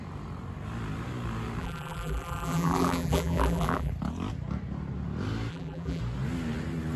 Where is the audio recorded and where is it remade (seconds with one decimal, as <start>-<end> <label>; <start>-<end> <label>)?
0.0-1.6 recorded; 1.6-3.9 remade; 3.9-5.5 recorded; 5.5-6.0 remade; 6.0-7.0 recorded